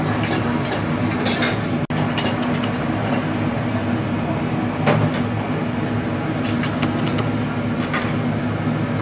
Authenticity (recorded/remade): recorded